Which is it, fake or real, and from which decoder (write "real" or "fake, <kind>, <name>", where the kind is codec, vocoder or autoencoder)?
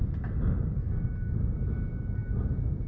real